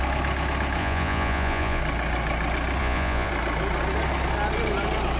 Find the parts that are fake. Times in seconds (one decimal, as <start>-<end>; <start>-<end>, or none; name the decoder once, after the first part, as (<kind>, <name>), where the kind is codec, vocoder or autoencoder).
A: 0.8-1.8 (vocoder, Vocos); 2.8-3.3